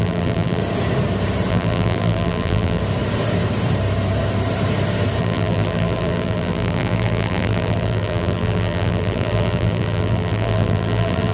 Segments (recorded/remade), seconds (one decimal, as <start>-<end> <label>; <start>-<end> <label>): 0.0-0.6 remade; 0.6-1.5 recorded; 1.5-2.8 remade; 2.8-5.2 recorded; 5.2-11.3 remade